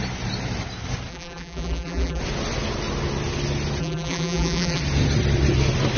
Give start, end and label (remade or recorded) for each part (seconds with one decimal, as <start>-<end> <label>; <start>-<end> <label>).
0.0-1.1 recorded; 1.1-2.2 remade; 2.2-3.8 recorded; 3.8-4.8 remade; 4.8-6.0 recorded